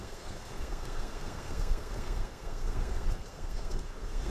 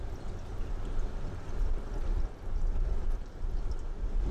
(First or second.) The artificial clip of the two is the first